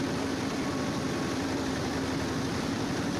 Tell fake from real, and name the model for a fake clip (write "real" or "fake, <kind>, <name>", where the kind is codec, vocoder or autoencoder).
real